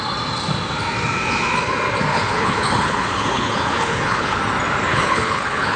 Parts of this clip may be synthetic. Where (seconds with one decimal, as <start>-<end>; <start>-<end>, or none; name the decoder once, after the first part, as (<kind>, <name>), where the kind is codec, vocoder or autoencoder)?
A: 2.1-4.4 (codec, HILCodec); 4.9-5.8